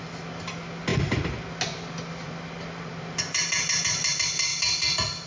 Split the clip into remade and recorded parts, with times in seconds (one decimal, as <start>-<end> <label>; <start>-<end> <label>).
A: 0.0-5.3 recorded